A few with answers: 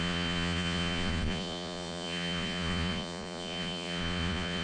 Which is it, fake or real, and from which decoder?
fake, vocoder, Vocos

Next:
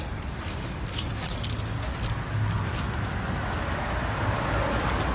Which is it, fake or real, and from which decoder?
real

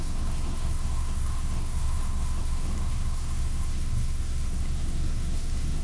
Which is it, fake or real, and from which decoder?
fake, codec, SNAC